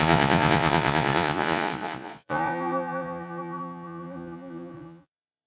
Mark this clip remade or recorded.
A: remade